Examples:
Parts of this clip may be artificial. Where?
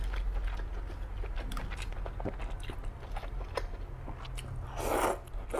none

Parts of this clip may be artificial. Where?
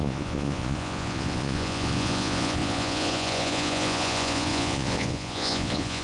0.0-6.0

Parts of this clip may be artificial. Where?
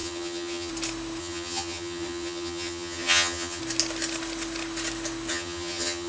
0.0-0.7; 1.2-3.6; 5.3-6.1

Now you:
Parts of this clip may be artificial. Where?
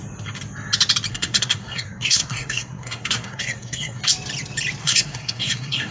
1.1-4.0; 4.8-5.9